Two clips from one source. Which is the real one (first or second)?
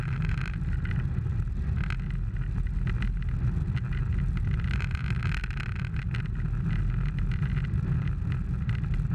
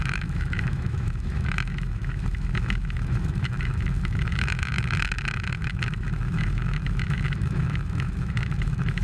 first